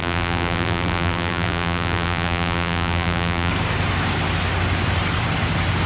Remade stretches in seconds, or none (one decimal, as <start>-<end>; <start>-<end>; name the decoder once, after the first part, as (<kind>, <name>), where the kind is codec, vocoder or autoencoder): 0.0-3.5 (vocoder, BigVGAN v2)